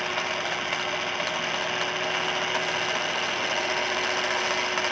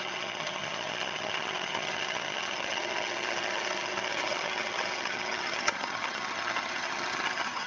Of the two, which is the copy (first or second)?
second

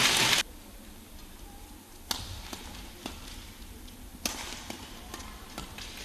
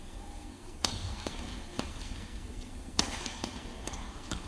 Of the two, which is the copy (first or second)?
second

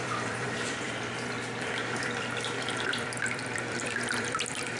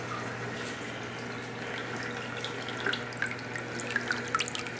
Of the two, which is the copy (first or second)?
first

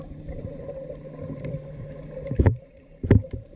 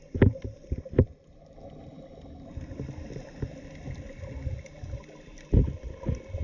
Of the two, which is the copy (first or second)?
first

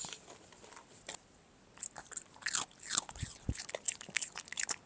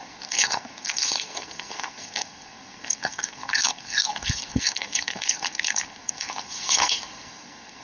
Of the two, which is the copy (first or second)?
second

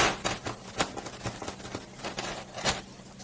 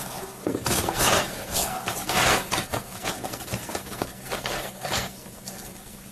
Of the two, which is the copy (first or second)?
second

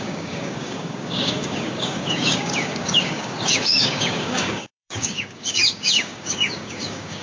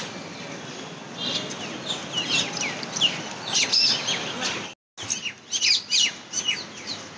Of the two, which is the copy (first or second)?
first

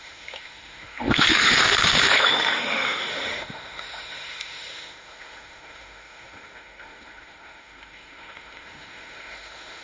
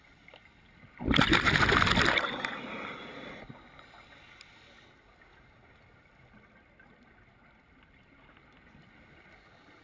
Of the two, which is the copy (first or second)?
first